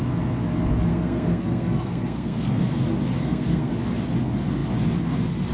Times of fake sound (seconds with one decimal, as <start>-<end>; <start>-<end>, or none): 0.9-2.8; 3.2-3.7